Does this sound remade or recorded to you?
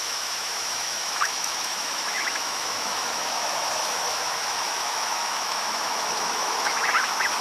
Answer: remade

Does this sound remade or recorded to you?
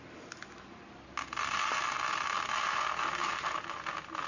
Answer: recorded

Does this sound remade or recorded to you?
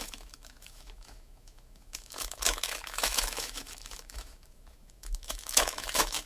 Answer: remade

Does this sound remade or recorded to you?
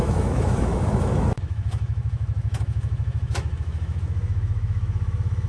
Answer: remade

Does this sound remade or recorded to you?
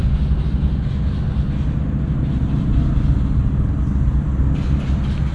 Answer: recorded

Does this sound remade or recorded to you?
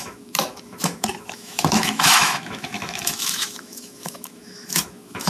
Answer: remade